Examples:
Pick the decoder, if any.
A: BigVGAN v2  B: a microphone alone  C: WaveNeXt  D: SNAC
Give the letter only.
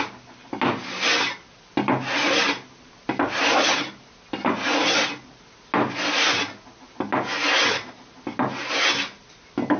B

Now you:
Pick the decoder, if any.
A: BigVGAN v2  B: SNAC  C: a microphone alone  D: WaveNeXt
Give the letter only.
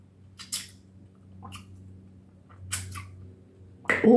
C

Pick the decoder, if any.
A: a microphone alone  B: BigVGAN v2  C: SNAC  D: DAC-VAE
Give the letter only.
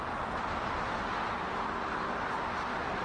A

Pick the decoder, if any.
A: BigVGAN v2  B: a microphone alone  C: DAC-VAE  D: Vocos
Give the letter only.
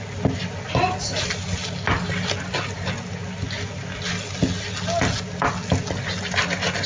B